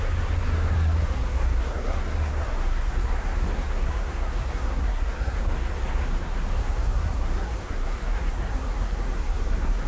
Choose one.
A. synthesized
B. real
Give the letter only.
A